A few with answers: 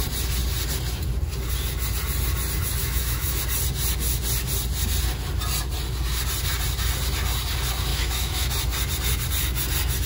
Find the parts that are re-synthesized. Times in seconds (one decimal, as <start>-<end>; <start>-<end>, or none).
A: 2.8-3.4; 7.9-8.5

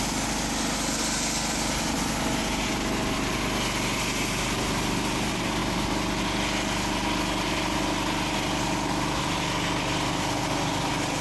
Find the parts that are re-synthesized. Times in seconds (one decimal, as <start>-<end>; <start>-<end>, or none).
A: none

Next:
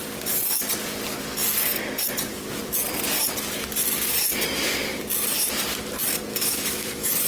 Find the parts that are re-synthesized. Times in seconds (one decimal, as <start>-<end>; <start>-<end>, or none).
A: 6.3-7.3